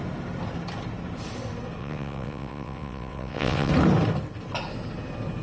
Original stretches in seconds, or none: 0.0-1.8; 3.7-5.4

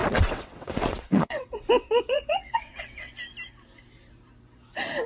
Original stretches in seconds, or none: 3.1-5.1

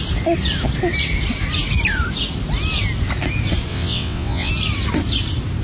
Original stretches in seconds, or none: 0.0-3.7; 4.5-5.6